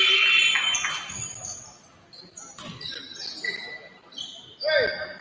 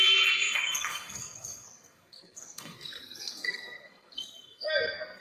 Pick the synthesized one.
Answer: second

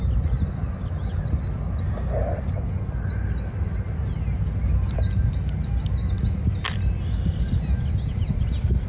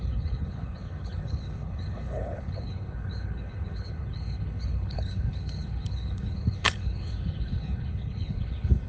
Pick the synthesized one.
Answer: second